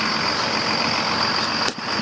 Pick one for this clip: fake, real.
real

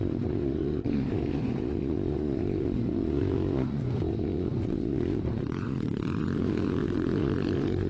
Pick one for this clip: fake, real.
fake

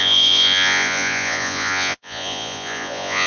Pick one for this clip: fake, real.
fake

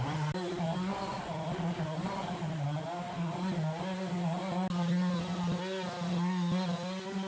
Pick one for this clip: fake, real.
real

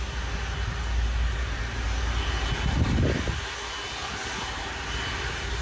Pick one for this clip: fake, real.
real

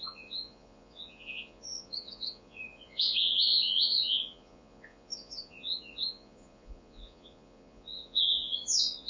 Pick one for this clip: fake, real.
fake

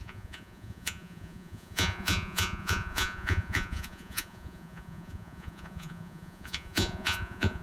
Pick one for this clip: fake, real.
fake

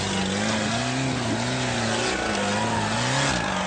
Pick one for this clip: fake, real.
real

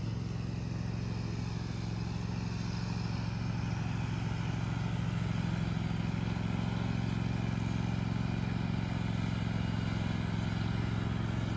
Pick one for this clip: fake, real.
real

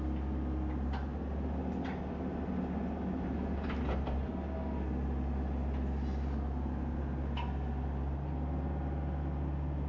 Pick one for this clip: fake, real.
real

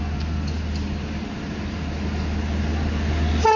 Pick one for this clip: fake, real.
real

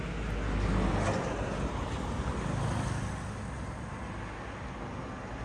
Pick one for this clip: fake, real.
real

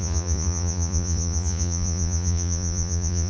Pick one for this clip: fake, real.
fake